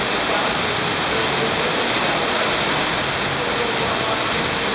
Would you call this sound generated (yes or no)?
no